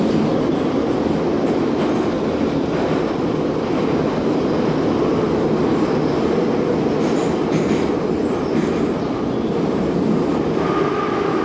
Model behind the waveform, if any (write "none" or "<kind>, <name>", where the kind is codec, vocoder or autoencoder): none